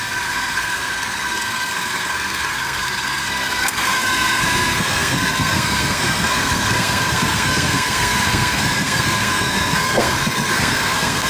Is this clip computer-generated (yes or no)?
yes